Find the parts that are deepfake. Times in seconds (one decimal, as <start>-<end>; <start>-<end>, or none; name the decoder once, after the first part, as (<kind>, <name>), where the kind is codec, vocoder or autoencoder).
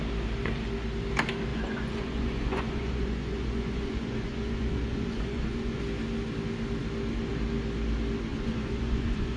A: 1.5-5.8 (vocoder, Vocos); 8.3-9.4